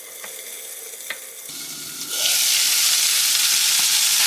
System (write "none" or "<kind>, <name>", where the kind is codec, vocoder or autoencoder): none